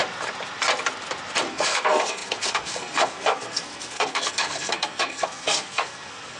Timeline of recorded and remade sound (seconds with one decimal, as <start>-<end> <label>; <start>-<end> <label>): 0.0-1.5 recorded; 1.5-6.4 remade